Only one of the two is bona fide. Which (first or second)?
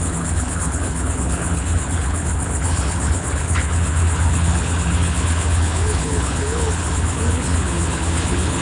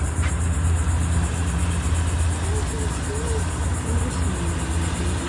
second